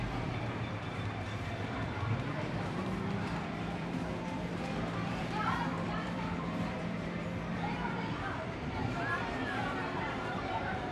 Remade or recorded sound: remade